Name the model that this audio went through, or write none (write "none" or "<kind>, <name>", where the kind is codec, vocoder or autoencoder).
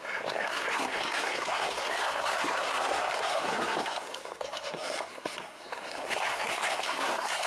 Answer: codec, SNAC